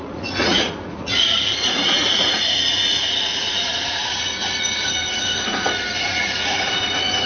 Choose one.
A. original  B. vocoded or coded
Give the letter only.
B